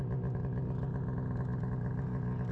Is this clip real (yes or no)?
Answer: yes